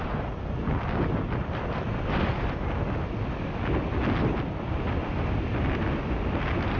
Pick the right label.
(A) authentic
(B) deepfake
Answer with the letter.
A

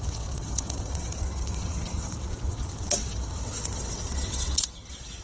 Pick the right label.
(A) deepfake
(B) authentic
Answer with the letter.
A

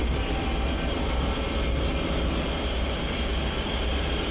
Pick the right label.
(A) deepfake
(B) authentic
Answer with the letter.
B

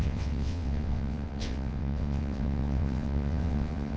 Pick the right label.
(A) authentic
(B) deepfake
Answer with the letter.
B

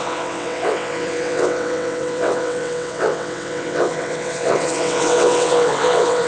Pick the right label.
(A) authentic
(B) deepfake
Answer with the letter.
B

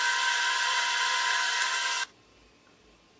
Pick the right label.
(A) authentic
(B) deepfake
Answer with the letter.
A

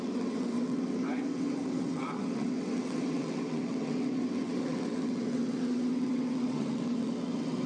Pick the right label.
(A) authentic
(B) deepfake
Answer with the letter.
B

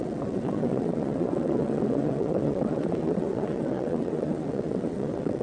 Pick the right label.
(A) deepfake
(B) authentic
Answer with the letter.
A